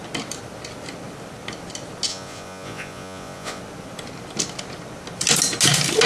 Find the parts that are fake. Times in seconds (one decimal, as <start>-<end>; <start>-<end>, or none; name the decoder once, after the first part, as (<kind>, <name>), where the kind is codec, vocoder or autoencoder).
2.1-3.6 (vocoder, Vocos)